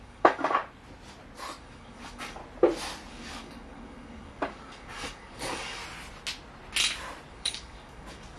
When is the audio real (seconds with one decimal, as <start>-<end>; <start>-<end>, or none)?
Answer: 0.6-1.6; 2.4-3.1; 5.8-7.3